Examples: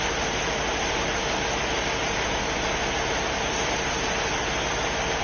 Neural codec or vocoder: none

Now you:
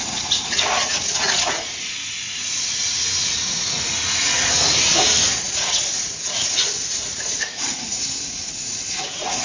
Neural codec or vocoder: vocoder, Vocos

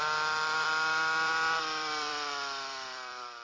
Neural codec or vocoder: vocoder, BigVGAN v2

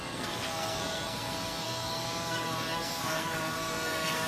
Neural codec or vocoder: codec, SNAC